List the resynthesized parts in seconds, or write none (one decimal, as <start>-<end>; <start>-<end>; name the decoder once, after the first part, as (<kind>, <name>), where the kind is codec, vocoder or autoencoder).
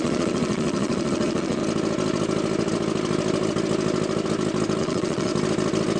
0.0-1.6 (vocoder, Vocos); 4.8-5.3